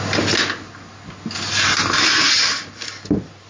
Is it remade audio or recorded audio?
recorded